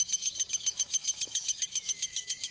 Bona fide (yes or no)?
no